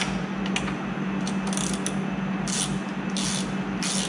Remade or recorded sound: recorded